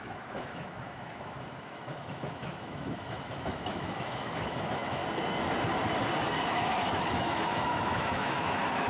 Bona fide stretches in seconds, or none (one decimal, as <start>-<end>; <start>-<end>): 5.0-6.5